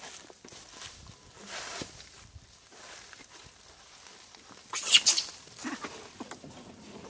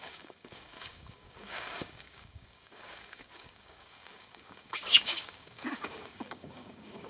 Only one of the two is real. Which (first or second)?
first